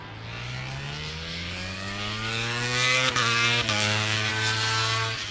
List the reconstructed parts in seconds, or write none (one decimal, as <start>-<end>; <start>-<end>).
1.1-4.3